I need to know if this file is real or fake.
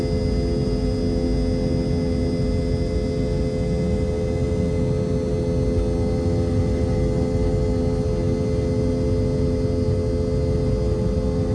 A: real